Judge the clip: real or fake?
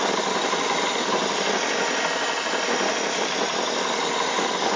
real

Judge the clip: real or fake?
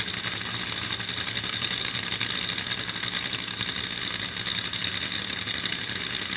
real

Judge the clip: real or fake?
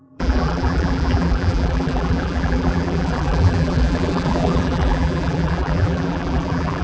fake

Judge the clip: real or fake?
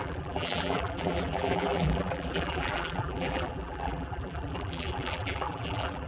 fake